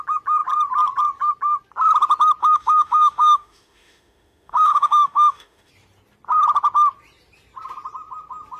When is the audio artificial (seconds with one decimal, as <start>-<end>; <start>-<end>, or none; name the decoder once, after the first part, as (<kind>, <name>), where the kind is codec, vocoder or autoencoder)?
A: 2.4-5.7 (autoencoder, DAC-VAE)